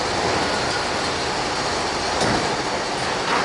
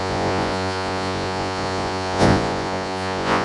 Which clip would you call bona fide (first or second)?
first